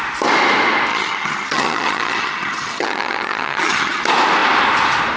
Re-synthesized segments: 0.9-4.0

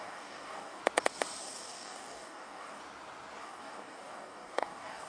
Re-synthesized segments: 0.0-0.8; 1.4-2.8; 3.4-5.1

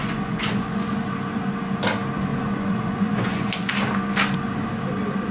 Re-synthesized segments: 0.0-0.9; 2.3-3.7

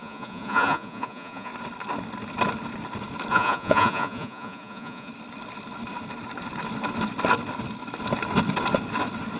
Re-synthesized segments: 0.0-1.5; 3.3-5.1

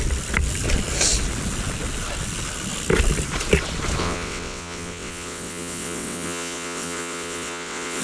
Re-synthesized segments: 4.0-8.0

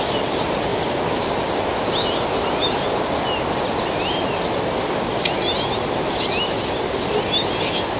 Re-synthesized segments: none